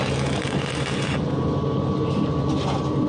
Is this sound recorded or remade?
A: recorded